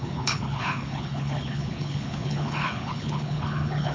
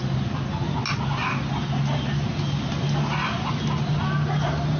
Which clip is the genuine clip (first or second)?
second